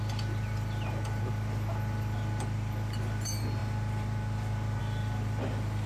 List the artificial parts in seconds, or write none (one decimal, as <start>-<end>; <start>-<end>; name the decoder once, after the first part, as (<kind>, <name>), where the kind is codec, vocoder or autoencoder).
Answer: 0.0-3.6 (vocoder, BigVGAN v2); 4.8-5.9